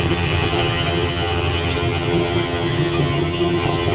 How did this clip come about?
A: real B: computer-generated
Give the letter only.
B